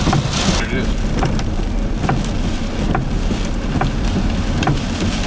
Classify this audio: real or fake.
real